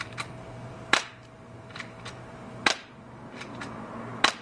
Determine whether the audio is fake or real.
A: fake